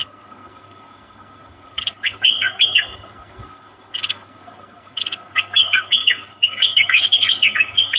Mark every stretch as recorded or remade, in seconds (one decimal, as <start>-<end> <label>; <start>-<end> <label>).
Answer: 0.0-8.0 remade